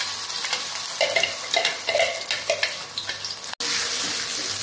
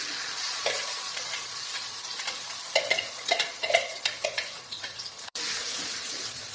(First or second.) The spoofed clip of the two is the second